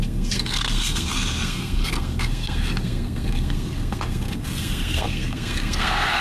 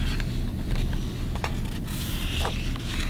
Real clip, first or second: second